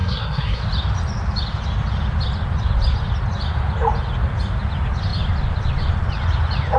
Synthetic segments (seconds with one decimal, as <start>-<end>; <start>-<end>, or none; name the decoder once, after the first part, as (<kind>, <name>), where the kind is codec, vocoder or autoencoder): 0.0-0.6 (codec, SNAC)